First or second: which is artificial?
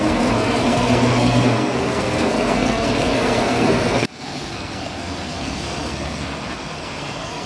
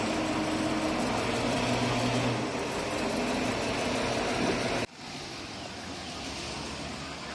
first